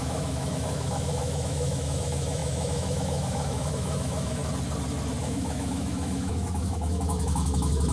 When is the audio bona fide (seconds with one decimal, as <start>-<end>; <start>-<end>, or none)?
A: 4.4-5.2